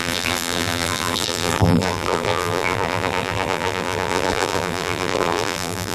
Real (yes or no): no